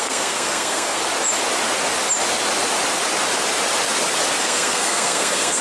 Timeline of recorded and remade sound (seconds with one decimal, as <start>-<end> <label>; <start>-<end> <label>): 0.0-1.0 remade; 1.0-4.4 recorded; 4.4-5.6 remade